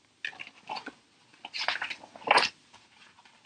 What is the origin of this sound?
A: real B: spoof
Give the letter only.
A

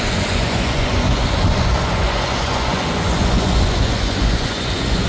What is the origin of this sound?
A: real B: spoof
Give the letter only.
B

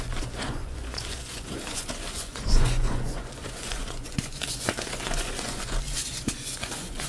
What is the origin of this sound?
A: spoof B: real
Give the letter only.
A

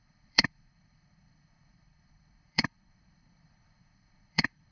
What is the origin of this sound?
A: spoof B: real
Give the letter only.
A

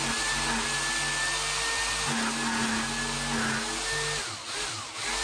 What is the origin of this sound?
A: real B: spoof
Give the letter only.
A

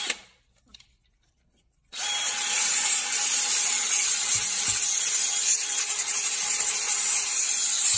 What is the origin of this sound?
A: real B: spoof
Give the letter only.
A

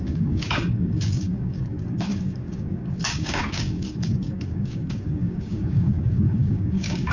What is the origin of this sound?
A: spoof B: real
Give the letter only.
A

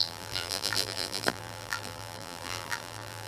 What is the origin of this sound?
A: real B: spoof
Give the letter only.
B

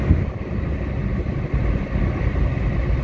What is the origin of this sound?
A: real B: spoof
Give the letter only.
A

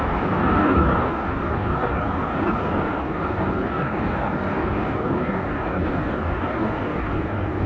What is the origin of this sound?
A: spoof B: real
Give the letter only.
A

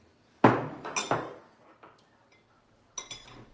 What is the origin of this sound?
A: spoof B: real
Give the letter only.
B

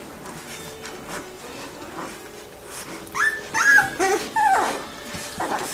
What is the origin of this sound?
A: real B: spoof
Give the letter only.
A